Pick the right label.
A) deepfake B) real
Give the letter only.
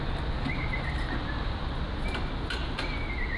B